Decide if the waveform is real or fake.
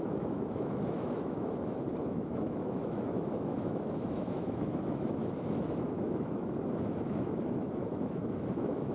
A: fake